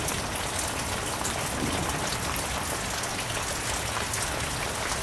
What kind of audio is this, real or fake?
real